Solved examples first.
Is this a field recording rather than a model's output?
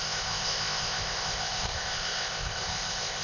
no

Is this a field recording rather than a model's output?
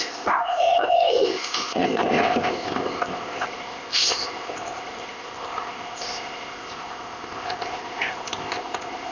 no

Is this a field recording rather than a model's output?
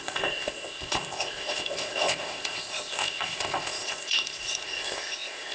no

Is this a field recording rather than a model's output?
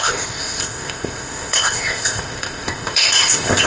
no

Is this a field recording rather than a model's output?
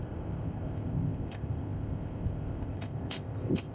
no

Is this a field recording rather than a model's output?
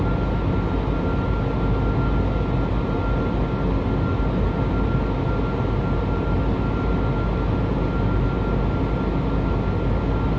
yes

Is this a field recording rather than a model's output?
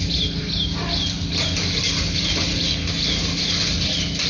yes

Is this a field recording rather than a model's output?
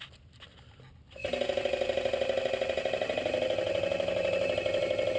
yes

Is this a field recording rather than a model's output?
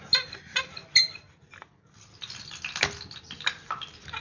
yes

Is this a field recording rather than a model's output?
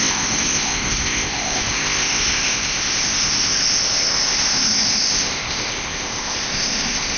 no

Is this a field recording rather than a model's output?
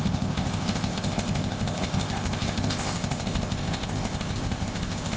no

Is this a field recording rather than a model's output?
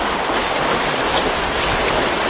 yes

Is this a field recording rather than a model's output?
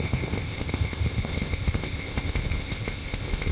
no